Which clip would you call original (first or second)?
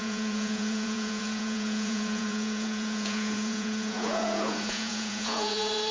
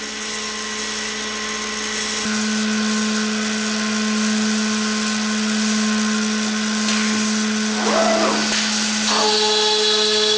second